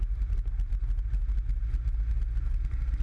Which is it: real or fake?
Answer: real